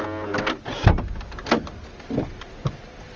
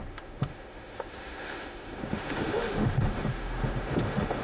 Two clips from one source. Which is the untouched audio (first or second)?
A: first